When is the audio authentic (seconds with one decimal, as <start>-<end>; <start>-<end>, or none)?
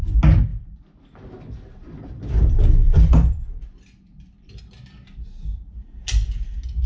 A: 0.0-0.5; 4.6-6.9